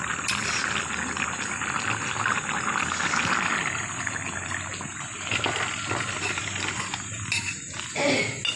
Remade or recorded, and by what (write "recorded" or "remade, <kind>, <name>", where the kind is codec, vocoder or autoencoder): recorded